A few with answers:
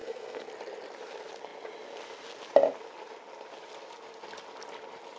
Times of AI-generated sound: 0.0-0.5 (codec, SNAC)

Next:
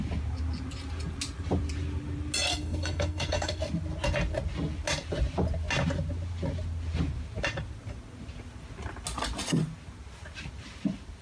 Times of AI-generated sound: 2.5-3.6 (codec, SNAC)